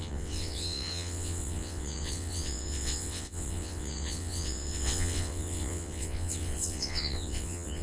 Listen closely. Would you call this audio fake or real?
fake